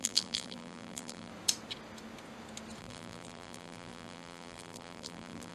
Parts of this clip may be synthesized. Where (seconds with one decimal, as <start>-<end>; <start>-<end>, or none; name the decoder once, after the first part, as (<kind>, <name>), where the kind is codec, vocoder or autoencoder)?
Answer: 0.0-1.3 (vocoder, BigVGAN v2); 2.8-5.5